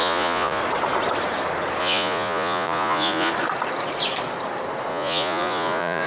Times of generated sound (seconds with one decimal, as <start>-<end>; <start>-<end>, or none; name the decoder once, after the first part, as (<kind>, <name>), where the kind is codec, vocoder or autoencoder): 0.0-0.6 (vocoder, Vocos); 1.8-3.3; 4.9-6.1